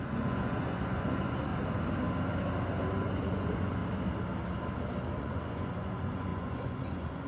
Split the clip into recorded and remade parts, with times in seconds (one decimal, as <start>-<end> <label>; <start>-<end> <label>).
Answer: 0.0-1.5 remade; 1.5-2.9 recorded; 2.9-3.8 remade; 3.8-5.2 recorded; 5.2-7.3 remade